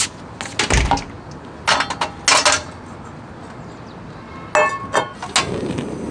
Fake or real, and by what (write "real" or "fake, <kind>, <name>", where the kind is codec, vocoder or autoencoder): real